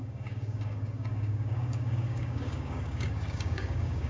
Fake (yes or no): yes